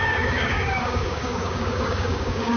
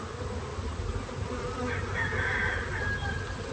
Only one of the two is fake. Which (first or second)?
first